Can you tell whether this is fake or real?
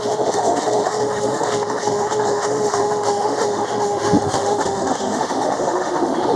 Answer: fake